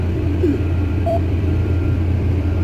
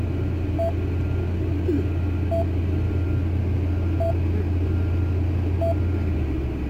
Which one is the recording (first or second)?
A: second